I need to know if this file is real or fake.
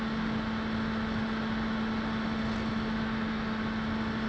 real